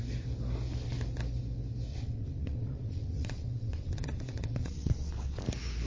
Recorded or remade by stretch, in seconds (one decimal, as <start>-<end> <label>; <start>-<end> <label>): 0.0-1.9 recorded; 1.9-5.4 remade; 5.4-5.9 recorded